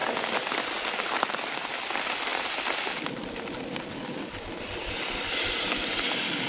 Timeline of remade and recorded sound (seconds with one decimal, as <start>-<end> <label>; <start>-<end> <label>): 0.0-6.5 recorded